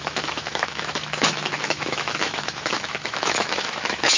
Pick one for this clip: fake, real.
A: fake